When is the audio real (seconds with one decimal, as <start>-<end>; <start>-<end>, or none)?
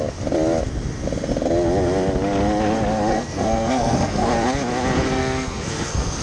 0.0-3.1; 4.3-5.2